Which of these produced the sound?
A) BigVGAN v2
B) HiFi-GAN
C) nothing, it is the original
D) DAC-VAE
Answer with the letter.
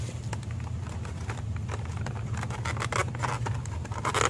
C